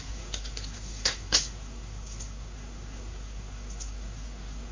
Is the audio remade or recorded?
remade